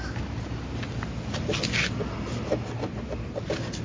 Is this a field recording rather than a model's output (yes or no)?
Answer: yes